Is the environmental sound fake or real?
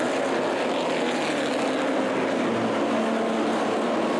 real